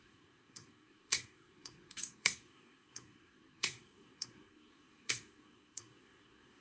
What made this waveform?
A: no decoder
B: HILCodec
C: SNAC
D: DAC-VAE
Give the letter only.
C